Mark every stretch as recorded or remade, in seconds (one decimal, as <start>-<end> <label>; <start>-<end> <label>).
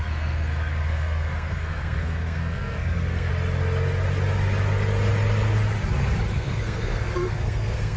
0.0-3.3 remade; 3.3-6.3 recorded; 6.3-8.0 remade